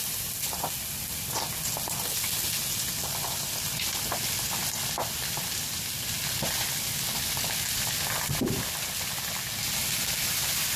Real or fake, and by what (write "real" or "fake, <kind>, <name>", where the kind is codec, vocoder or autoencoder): real